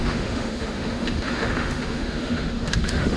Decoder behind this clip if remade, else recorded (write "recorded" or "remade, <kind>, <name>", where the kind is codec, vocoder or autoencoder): remade, autoencoder, DAC-VAE